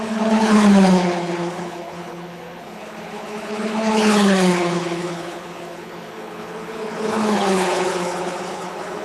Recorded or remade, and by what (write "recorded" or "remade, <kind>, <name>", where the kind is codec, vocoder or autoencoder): remade, codec, HILCodec